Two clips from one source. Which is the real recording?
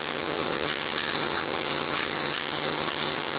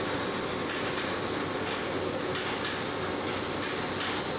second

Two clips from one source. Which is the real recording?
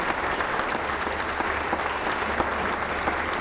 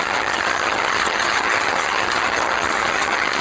first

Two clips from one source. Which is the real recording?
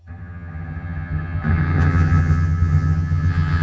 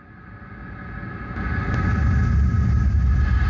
second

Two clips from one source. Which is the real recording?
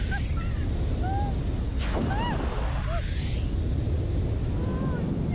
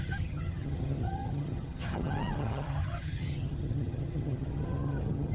first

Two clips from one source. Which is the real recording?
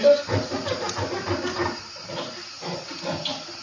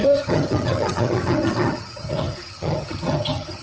first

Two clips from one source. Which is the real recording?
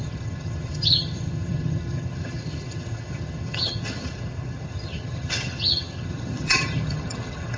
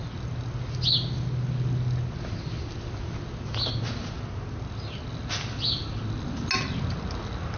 second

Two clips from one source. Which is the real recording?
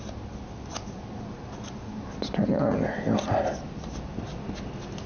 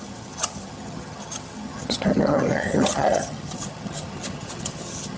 first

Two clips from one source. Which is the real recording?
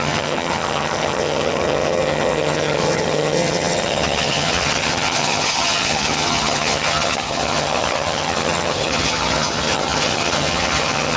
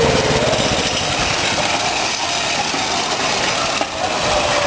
second